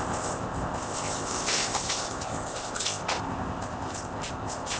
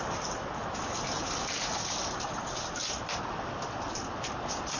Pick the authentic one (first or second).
second